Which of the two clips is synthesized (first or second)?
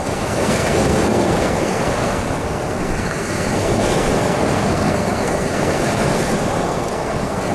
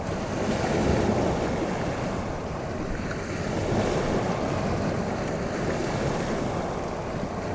first